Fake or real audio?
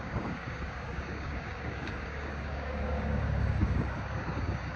fake